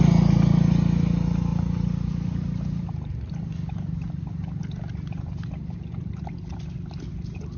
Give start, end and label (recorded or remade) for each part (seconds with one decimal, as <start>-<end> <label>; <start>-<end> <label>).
0.0-7.6 recorded